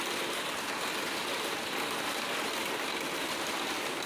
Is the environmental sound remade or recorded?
recorded